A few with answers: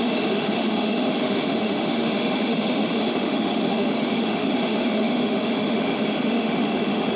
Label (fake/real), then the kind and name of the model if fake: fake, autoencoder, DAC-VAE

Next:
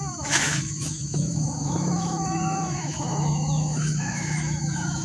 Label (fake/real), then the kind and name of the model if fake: fake, autoencoder, DAC-VAE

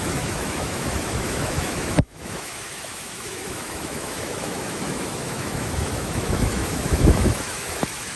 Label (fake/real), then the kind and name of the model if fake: fake, autoencoder, DAC-VAE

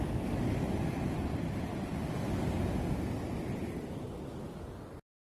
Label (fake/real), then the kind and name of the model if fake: real